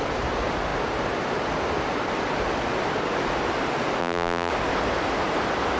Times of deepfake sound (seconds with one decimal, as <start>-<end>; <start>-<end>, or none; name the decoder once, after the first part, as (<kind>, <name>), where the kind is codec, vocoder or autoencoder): 4.0-4.5 (vocoder, BigVGAN v2)